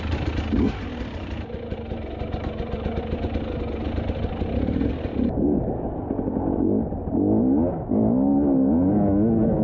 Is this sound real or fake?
real